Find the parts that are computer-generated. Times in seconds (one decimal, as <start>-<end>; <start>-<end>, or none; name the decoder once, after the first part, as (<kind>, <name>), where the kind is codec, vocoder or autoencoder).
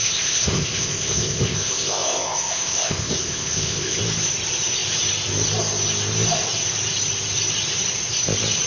0.0-4.0 (codec, ZipCodec)